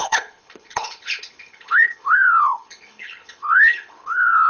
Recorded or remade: remade